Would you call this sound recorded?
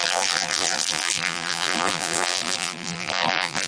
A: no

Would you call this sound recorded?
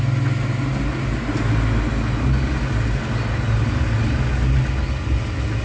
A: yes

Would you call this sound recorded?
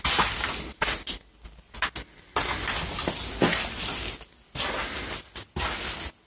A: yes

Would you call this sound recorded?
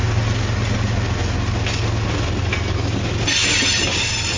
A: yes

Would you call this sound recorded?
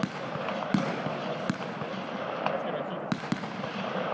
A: yes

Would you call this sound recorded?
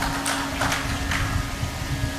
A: yes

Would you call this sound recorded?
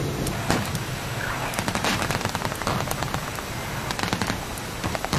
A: yes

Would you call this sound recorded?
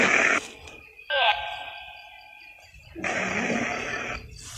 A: yes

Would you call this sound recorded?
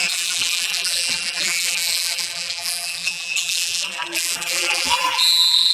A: no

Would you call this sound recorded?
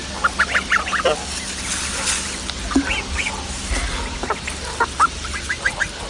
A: yes